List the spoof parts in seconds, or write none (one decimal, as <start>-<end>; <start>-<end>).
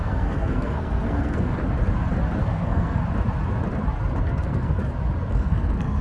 0.0-1.6; 2.4-3.0; 4.2-4.8; 5.3-6.0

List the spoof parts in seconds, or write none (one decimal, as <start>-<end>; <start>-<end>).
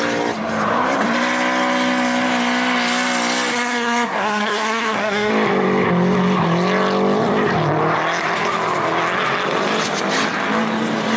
3.5-5.3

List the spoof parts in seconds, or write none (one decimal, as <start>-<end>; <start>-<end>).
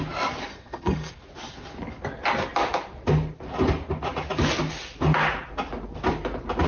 0.5-1.1